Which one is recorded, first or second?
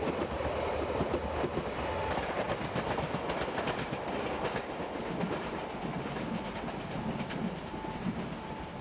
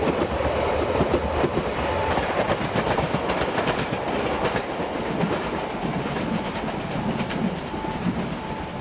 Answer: first